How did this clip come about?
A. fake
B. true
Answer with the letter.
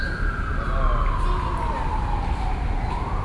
B